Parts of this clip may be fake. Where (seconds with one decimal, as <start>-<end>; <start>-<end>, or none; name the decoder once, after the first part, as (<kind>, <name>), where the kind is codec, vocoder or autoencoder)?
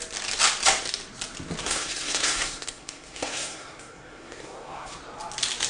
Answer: 1.6-5.0 (codec, SNAC)